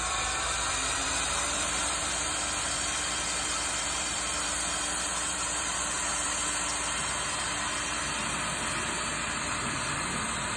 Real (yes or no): no